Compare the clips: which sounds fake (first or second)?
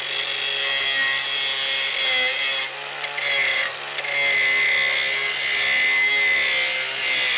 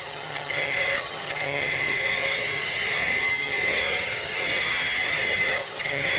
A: second